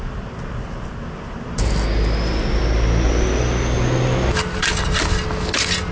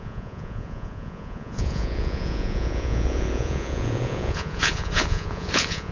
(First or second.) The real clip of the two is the first